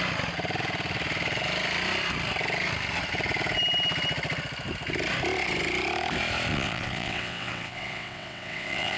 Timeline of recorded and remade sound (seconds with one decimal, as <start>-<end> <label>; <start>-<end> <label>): 0.0-6.5 recorded; 6.5-9.0 remade

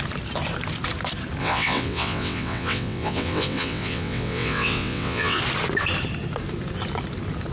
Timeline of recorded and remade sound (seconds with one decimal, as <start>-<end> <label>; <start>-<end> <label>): 0.0-1.4 recorded; 1.4-5.4 remade; 5.4-7.5 recorded